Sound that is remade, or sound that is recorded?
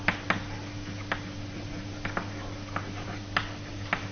recorded